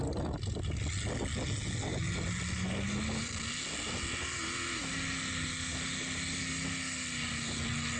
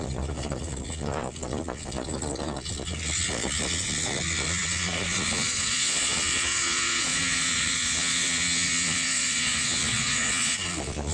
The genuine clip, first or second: first